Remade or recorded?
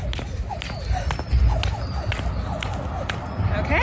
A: recorded